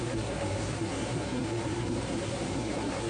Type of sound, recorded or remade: remade